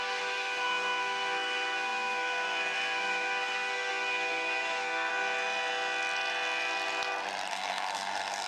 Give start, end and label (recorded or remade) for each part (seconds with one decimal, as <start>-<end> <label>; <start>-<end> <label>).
0.0-5.1 remade; 5.1-7.5 recorded; 7.5-8.5 remade